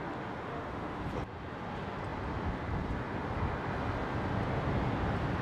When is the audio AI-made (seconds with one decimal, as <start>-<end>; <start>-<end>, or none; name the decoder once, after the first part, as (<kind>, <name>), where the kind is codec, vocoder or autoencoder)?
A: 0.5-1.0 (autoencoder, DAC-VAE)